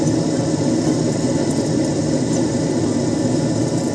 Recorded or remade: remade